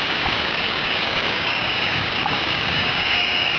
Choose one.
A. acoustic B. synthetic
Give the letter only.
B